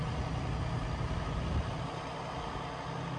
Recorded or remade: recorded